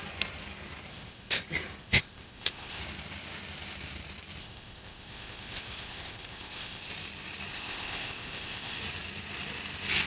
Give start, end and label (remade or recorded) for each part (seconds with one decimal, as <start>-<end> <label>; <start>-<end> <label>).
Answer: 0.0-0.9 recorded; 0.9-1.4 remade; 1.4-1.8 recorded; 1.8-2.8 remade; 2.8-4.4 recorded; 4.4-6.9 remade; 6.9-7.5 recorded; 7.5-8.8 remade; 8.8-10.1 recorded